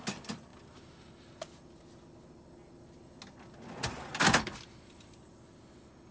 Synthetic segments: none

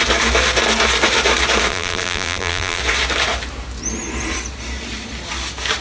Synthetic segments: 1.7-2.8 (vocoder, BigVGAN v2)